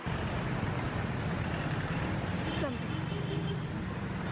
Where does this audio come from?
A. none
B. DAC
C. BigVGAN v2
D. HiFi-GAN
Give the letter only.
A